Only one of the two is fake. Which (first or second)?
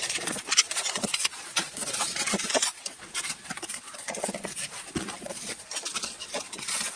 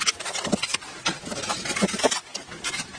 first